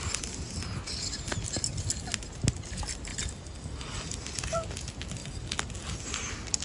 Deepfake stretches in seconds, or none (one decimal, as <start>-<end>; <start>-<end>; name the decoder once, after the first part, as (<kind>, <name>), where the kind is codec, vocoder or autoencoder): 3.1-4.2 (vocoder, BigVGAN v2); 5.2-5.7